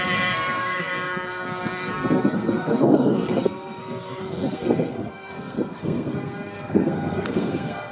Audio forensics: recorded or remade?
remade